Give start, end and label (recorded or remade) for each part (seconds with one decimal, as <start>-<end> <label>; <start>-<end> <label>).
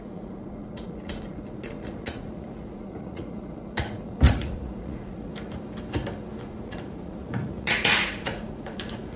0.0-5.3 remade; 5.3-6.4 recorded; 6.4-9.2 remade